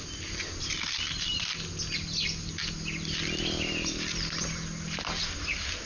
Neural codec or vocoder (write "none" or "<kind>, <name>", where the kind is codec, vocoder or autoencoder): none